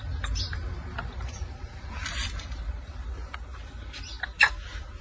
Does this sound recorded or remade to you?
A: remade